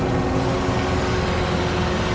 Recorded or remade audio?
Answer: recorded